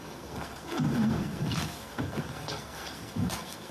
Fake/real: fake